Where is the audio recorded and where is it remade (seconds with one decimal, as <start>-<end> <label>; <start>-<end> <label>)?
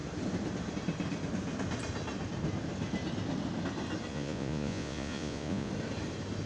0.0-4.1 recorded; 4.1-5.7 remade; 5.7-6.5 recorded